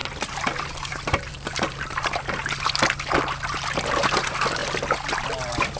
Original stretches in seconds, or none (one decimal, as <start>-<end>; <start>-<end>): 0.0-0.6; 2.4-4.0; 4.6-5.2